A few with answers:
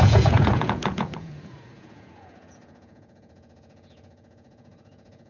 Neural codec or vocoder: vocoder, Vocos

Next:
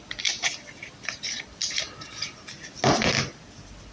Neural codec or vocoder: none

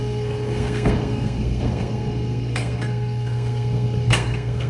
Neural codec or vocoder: codec, SNAC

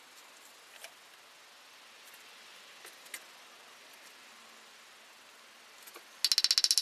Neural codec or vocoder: none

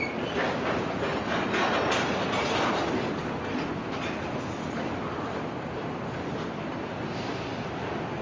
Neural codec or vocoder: none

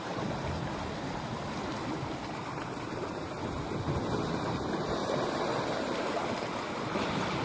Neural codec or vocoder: none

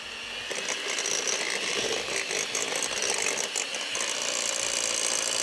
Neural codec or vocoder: none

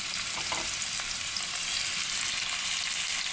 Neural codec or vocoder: none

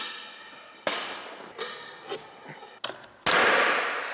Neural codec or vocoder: none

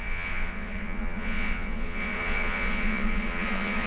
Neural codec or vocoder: vocoder, Vocos